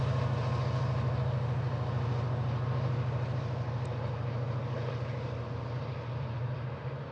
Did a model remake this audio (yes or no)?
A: no